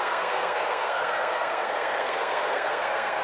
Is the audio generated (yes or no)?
yes